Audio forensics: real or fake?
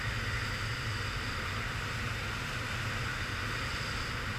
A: real